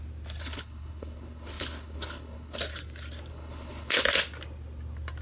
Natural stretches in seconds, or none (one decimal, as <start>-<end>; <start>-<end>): 0.0-0.4; 2.6-3.3; 4.0-5.2